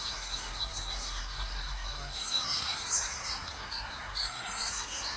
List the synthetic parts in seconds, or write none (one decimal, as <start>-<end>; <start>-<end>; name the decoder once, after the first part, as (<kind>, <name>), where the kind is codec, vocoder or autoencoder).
0.0-5.2 (codec, SNAC)